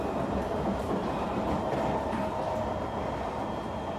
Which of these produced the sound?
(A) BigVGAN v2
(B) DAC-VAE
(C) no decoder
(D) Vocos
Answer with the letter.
C